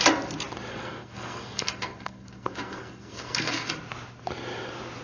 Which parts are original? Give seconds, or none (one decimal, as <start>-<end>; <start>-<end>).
0.0-0.7; 3.7-5.0